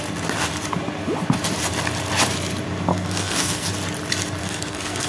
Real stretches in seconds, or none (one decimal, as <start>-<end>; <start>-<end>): 0.0-2.9; 3.7-4.4